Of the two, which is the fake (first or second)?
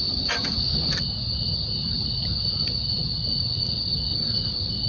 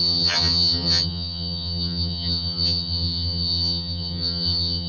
second